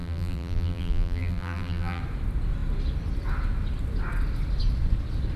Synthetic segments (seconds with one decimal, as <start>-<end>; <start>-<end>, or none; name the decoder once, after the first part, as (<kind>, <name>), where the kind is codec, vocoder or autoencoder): 0.0-2.0 (vocoder, BigVGAN v2)